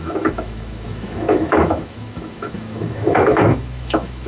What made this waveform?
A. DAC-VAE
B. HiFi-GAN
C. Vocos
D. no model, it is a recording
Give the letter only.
A